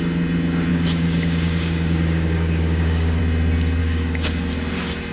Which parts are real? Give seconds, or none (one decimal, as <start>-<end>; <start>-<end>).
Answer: 0.0-0.7; 3.2-3.8; 4.5-5.1